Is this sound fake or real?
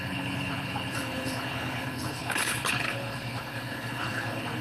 fake